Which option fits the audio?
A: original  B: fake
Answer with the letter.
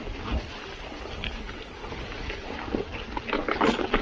A